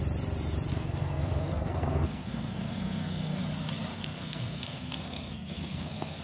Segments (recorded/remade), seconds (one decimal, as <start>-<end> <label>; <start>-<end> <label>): 0.0-0.7 recorded; 0.7-3.4 remade; 3.4-3.9 recorded; 3.9-6.2 remade

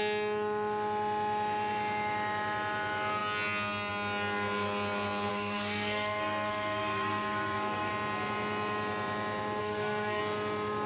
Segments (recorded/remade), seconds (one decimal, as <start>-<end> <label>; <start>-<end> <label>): 0.0-5.3 recorded; 5.3-7.9 remade; 7.9-9.6 recorded; 9.6-10.2 remade; 10.2-10.9 recorded

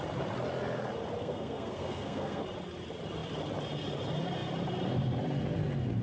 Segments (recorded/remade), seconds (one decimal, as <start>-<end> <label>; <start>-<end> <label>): 0.0-1.2 recorded; 1.2-2.4 remade; 2.4-6.0 recorded

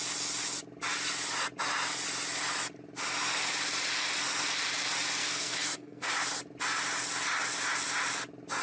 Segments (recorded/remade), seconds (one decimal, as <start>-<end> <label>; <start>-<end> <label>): 0.0-5.2 recorded; 5.2-6.1 remade; 6.1-8.6 recorded